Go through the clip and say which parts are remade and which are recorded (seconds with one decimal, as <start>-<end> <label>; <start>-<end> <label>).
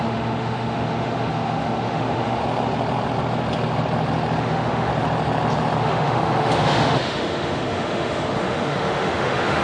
0.0-2.4 remade; 2.4-4.4 recorded; 4.4-4.9 remade; 4.9-5.8 recorded; 5.8-9.6 remade